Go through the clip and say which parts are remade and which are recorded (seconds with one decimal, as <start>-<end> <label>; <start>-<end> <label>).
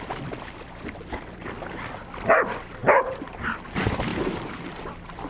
0.0-2.8 recorded; 2.8-3.3 remade; 3.3-4.1 recorded; 4.1-4.8 remade; 4.8-5.3 recorded